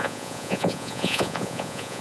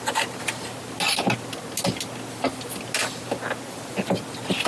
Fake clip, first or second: first